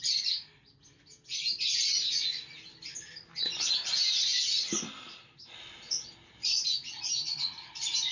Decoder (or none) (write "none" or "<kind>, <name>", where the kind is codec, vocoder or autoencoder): none